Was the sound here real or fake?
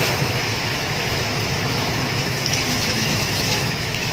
fake